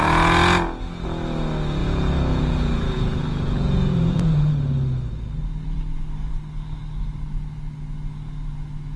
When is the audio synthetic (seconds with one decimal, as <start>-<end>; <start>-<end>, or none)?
1.8-4.5